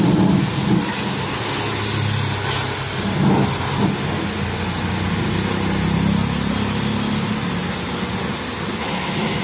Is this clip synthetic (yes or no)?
no